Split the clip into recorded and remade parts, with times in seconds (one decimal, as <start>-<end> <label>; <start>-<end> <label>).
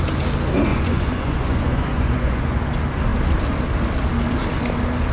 0.0-0.7 recorded; 0.7-2.4 remade; 2.4-5.1 recorded